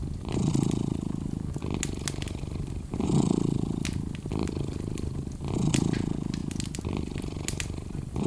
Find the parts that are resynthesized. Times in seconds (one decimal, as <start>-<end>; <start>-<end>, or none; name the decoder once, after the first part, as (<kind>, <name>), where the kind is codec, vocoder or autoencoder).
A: none